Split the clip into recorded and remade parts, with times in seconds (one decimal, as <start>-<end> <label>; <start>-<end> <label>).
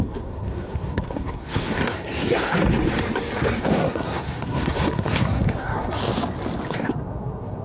0.0-2.6 remade; 2.6-3.6 recorded; 3.6-6.0 remade; 6.0-6.7 recorded; 6.7-7.6 remade